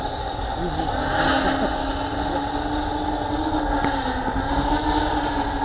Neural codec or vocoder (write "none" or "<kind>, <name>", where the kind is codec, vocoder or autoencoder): none